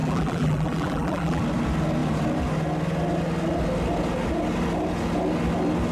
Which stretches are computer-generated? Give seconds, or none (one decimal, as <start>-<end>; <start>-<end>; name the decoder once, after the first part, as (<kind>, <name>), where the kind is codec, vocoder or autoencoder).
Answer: 0.0-1.4 (vocoder, BigVGAN v2)